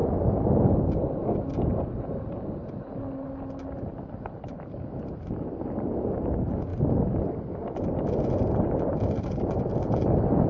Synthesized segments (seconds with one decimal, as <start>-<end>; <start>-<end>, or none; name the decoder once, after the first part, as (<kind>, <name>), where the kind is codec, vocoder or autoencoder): none